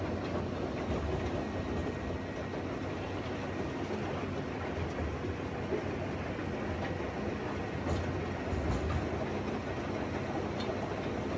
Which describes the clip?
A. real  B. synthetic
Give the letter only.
A